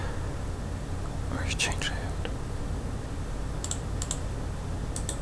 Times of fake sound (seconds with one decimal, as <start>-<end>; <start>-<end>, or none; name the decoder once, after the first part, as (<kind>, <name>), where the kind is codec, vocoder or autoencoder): none